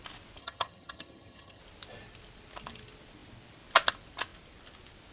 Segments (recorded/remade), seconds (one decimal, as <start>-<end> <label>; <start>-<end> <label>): 0.0-0.4 recorded; 0.4-1.6 remade; 1.6-5.1 recorded